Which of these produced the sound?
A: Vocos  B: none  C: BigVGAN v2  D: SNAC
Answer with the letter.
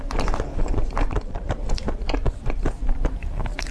C